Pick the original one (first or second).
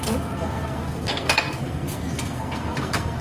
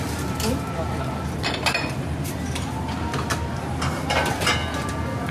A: second